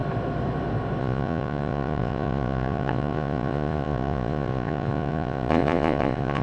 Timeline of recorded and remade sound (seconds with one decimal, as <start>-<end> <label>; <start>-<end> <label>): 0.0-1.0 recorded; 1.0-6.4 remade